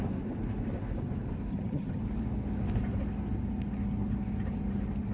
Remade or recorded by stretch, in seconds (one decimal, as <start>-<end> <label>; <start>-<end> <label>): 0.0-1.5 recorded; 1.5-2.0 remade; 2.0-5.1 recorded